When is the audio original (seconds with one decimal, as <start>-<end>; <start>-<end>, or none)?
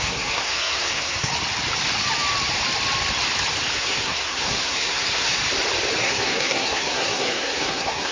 1.3-3.7; 5.4-6.0